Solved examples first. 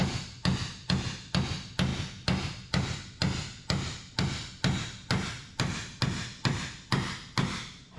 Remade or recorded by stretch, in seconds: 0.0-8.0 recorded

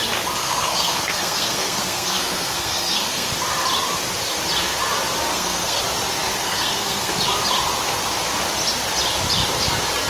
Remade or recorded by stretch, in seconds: 0.0-0.4 recorded; 0.4-3.3 remade; 3.3-5.3 recorded; 5.3-5.8 remade; 5.8-6.4 recorded; 6.4-7.1 remade; 7.1-10.1 recorded

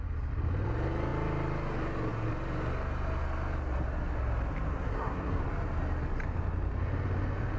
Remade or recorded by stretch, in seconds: 0.0-4.7 recorded; 4.7-5.4 remade; 5.4-7.6 recorded

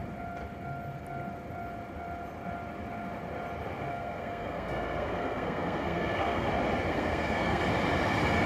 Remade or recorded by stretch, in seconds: 0.0-3.9 recorded; 3.9-6.5 remade; 6.5-6.9 recorded; 6.9-7.6 remade; 7.6-8.5 recorded

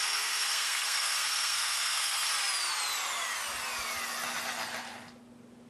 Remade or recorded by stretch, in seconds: 0.0-2.3 remade; 2.3-5.7 recorded

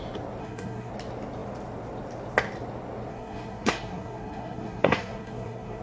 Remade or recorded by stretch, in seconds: 0.0-0.4 recorded; 0.4-0.9 remade; 0.9-3.1 recorded; 3.1-5.8 remade